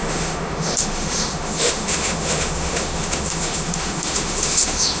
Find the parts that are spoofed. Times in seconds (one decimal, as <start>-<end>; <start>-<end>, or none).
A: 0.0-5.0